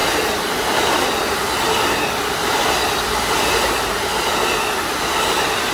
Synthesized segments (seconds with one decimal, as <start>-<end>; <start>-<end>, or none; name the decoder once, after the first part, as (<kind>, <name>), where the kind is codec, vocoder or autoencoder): none